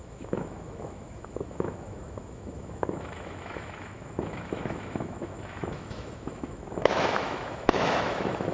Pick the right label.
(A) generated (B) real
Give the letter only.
A